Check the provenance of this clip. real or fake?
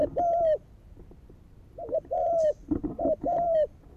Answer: fake